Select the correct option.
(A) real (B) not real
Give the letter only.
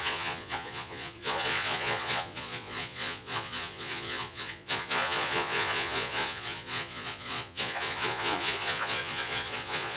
B